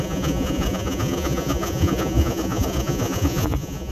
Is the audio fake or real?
fake